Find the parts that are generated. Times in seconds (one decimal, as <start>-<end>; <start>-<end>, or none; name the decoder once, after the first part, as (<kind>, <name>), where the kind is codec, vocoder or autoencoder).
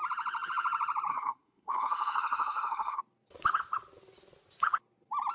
1.1-3.0 (codec, SNAC)